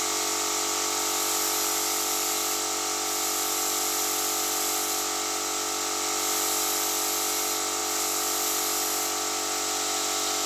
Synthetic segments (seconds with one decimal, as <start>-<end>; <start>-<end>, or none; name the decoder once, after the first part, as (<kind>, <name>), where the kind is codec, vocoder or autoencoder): none